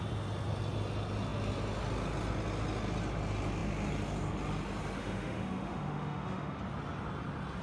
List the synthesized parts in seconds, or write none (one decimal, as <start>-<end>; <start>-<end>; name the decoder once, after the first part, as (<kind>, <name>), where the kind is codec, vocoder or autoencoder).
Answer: 5.0-6.6 (autoencoder, DAC-VAE)